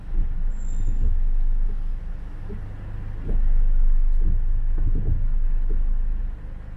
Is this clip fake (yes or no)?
no